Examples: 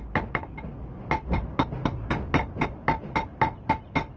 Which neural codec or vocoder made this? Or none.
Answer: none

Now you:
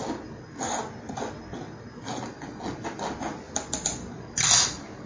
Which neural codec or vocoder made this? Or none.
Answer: none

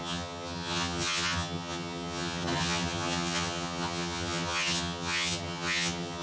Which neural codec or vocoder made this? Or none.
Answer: vocoder, HiFi-GAN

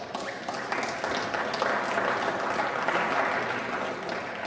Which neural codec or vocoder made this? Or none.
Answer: none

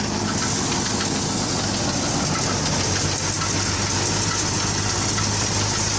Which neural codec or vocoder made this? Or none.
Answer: none